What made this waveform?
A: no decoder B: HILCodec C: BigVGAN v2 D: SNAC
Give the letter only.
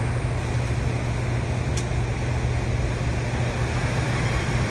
A